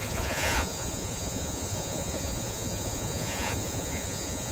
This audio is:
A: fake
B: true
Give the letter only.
A